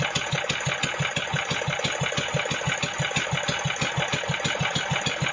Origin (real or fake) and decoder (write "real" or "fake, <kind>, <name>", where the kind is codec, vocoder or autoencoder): real